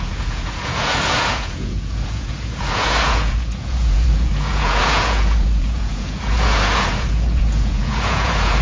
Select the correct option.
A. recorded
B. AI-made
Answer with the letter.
B